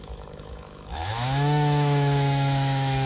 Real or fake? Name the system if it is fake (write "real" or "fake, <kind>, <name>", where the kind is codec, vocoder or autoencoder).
fake, autoencoder, DAC-VAE